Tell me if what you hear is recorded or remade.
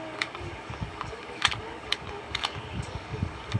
remade